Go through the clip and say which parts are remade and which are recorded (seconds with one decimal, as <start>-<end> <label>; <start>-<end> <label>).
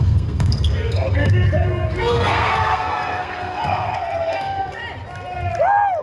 0.0-4.8 remade; 4.8-6.0 recorded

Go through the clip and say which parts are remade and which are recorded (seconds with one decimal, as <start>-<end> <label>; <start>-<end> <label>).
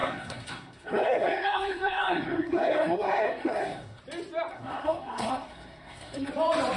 0.0-4.0 remade; 4.0-4.5 recorded; 4.5-6.3 remade; 6.3-6.8 recorded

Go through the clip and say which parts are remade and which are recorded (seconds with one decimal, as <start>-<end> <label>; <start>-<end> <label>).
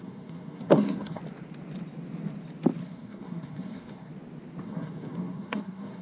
0.0-1.2 remade; 1.2-2.8 recorded; 2.8-4.1 remade; 4.1-4.6 recorded; 4.6-6.0 remade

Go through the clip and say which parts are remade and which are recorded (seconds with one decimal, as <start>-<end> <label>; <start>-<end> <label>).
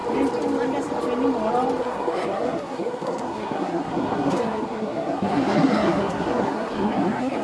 0.0-1.8 recorded; 1.8-7.4 remade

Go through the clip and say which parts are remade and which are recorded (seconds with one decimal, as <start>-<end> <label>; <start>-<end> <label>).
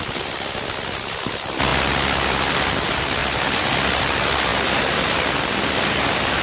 0.0-6.4 recorded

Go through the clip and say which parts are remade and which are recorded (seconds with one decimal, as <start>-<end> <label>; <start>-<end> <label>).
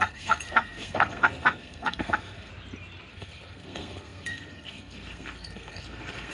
0.0-2.5 remade; 2.5-3.1 recorded; 3.1-6.3 remade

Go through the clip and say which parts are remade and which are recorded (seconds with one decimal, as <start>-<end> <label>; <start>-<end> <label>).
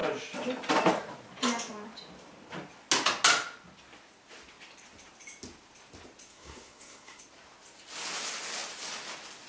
0.0-6.3 recorded; 6.3-7.2 remade; 7.2-9.5 recorded